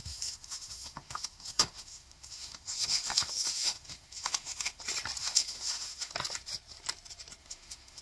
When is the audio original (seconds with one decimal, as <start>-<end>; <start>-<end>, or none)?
4.8-5.2; 6.1-7.4